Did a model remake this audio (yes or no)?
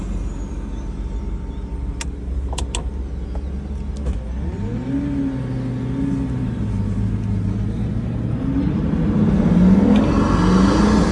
no